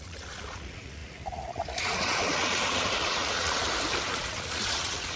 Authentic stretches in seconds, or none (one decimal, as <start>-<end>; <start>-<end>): 3.6-4.1